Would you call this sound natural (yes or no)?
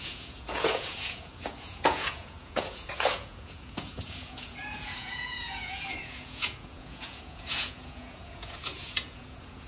no